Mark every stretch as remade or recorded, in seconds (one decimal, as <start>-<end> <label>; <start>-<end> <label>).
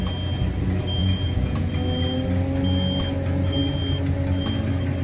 0.0-1.0 recorded; 1.0-1.7 remade; 1.7-5.0 recorded